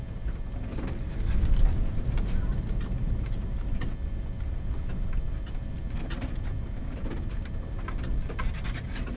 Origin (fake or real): real